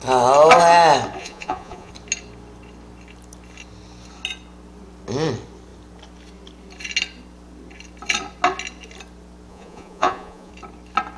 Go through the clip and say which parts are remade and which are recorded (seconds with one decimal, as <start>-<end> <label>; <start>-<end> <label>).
0.0-1.2 recorded; 1.2-1.9 remade; 1.9-9.5 recorded; 9.5-10.5 remade; 10.5-11.2 recorded

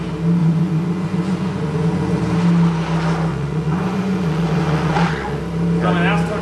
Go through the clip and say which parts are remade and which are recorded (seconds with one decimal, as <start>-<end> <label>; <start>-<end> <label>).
0.0-0.4 recorded; 0.4-2.2 remade; 2.2-3.3 recorded; 3.3-5.4 remade; 5.4-6.4 recorded